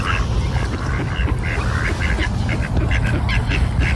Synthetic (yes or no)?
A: no